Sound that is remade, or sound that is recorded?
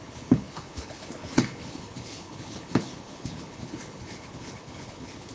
remade